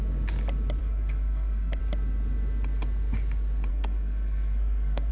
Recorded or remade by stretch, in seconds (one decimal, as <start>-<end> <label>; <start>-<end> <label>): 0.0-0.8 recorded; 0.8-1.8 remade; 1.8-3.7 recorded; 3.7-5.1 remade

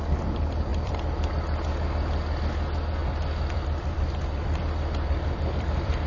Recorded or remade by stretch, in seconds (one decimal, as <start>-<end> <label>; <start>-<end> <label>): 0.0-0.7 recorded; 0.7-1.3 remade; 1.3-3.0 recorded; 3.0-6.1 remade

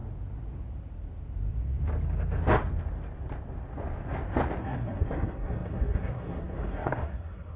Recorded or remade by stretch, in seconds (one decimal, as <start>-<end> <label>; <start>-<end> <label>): 0.0-4.6 recorded; 4.6-7.6 remade